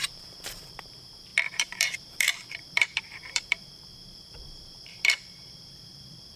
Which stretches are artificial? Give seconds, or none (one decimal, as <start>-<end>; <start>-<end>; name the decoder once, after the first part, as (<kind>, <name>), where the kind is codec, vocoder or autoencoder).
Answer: 0.0-6.4 (vocoder, BigVGAN v2)